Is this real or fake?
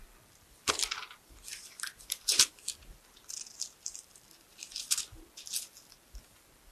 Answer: real